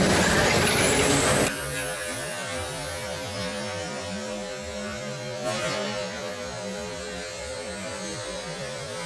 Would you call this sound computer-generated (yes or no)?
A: no